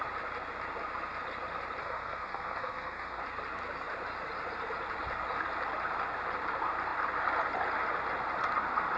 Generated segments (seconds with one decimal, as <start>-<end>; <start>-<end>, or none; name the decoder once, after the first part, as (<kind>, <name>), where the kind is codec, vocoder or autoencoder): 1.8-3.2 (codec, SNAC)